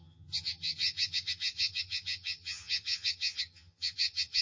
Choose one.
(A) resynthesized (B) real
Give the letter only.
A